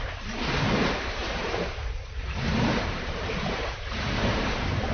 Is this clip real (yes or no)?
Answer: no